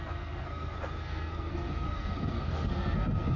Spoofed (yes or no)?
yes